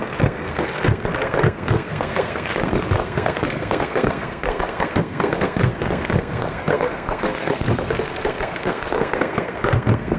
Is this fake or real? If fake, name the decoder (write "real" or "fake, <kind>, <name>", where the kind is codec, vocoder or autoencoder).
fake, codec, SNAC